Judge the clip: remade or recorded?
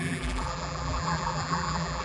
remade